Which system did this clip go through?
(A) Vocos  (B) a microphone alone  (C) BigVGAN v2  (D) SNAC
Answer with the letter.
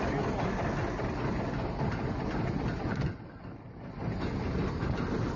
B